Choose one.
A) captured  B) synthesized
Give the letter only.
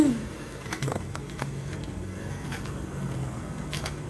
B